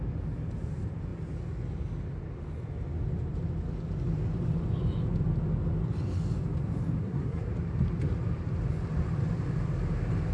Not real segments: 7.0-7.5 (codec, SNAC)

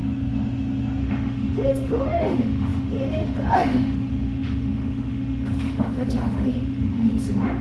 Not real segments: 1.0-7.6 (autoencoder, DAC-VAE)

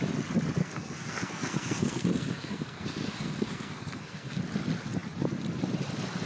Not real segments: 0.6-4.4 (codec, SNAC)

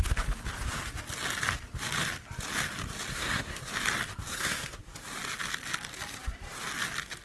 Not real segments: 3.1-3.7 (codec, SNAC); 4.3-4.8